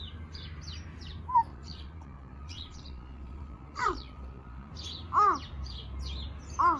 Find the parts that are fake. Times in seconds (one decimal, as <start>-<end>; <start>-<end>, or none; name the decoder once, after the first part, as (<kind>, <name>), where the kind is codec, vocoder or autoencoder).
1.5-4.7 (vocoder, Vocos)